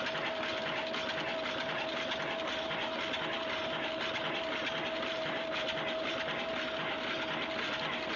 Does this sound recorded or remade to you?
recorded